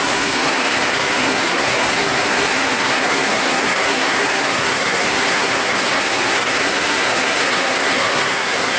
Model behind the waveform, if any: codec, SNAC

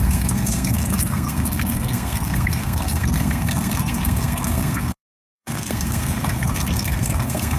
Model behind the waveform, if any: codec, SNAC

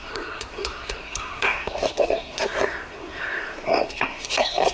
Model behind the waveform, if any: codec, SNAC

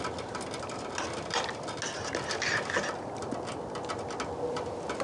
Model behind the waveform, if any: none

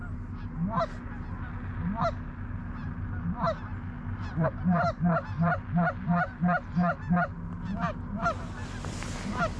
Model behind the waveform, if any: none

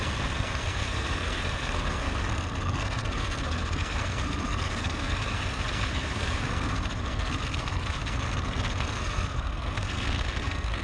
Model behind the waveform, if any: codec, SNAC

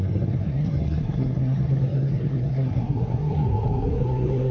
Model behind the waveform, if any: codec, SNAC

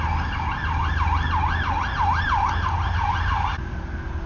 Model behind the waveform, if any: none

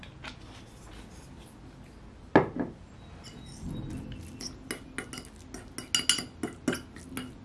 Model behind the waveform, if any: none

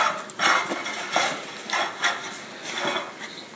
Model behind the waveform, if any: none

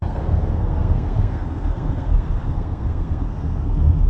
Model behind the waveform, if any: codec, SNAC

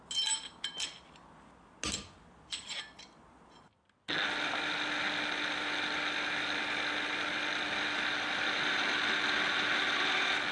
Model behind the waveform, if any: none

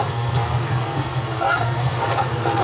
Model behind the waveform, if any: codec, SNAC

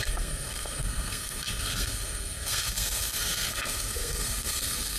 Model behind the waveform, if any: codec, SNAC